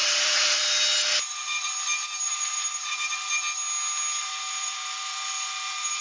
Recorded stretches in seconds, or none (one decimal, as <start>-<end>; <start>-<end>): 0.6-2.0; 3.3-4.2